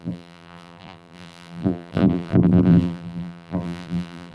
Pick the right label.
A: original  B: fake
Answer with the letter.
B